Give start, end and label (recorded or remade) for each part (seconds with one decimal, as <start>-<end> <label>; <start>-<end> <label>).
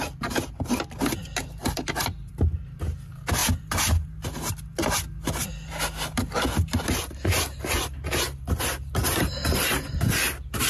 0.0-1.6 recorded; 1.6-2.3 remade; 2.3-10.7 recorded